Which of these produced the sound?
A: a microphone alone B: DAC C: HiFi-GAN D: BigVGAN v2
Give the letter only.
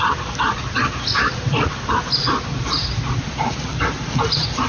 A